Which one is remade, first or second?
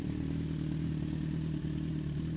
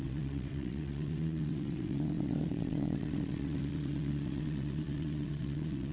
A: second